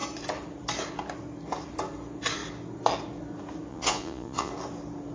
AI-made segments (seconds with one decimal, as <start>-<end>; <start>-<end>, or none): 3.7-4.5